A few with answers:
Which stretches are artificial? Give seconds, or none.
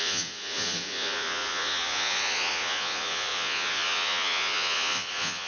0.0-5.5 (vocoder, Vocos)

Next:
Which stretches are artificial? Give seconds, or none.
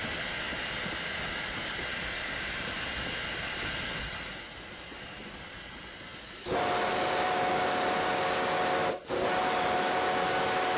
none